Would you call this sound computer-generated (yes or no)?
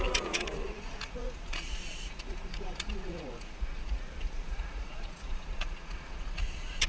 yes